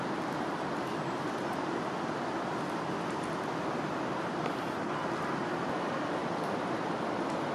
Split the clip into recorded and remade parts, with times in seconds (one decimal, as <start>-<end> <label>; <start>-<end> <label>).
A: 0.0-6.2 recorded; 6.2-7.0 remade; 7.0-7.5 recorded